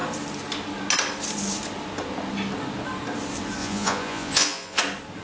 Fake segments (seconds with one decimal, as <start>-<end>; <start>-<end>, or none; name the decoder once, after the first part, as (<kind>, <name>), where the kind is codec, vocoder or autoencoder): 3.6-4.8 (vocoder, Vocos)